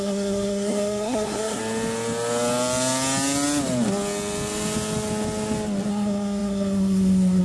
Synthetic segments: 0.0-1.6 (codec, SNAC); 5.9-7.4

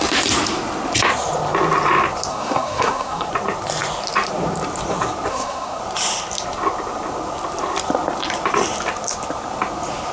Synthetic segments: 2.3-3.3 (codec, SNAC); 5.3-5.8

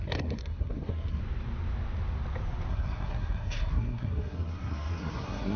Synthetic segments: 0.0-1.2 (codec, SNAC); 2.7-5.6

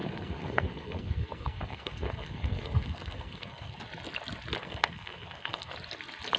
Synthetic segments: 0.0-3.8 (codec, SNAC); 4.6-5.7

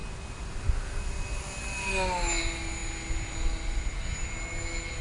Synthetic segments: none

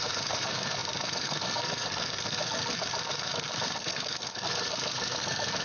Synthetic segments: 0.0-5.6 (codec, SNAC)

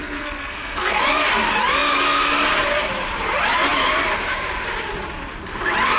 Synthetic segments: 0.0-1.0 (codec, SNAC)